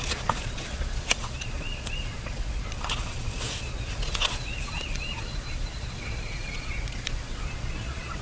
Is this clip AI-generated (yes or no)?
yes